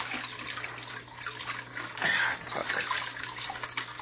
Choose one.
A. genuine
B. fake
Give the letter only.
A